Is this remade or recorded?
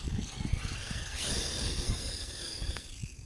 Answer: remade